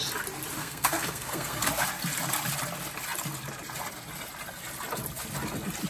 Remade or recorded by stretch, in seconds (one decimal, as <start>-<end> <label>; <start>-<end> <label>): 0.0-0.6 recorded; 0.6-1.6 remade; 1.6-5.9 recorded